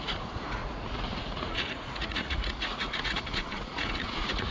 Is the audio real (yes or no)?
no